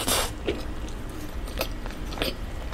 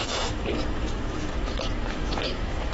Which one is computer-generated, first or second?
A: second